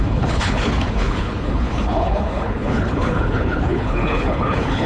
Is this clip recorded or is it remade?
remade